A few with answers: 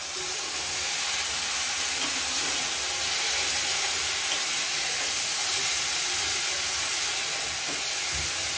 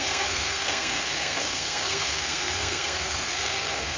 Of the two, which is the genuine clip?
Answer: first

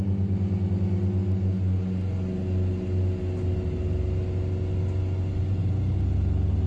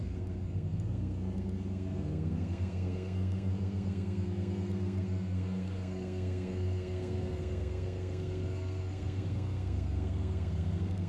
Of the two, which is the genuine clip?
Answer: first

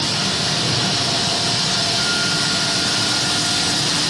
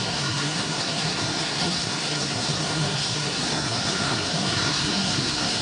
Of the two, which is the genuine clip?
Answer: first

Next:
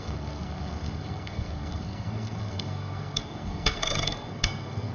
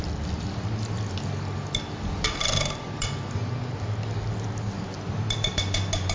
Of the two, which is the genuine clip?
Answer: second